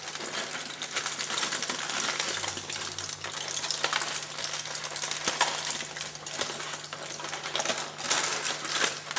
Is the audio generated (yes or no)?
no